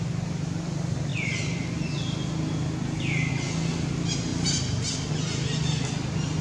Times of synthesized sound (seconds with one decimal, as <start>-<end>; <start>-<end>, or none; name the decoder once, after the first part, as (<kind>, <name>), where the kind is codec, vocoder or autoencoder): none